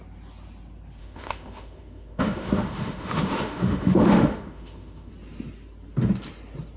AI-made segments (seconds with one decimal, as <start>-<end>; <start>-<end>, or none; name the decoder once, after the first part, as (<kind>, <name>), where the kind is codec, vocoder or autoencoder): 1.0-5.1 (autoencoder, DAC-VAE)